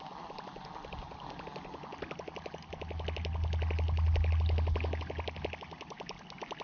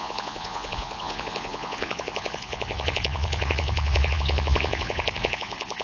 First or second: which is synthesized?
second